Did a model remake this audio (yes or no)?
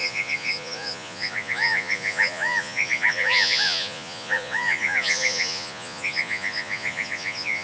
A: yes